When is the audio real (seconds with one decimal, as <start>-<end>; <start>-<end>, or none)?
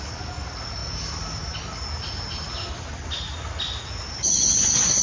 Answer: 0.0-5.0